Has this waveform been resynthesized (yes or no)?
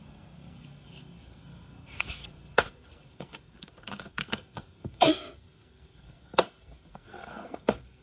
yes